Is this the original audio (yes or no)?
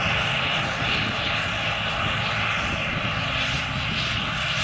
yes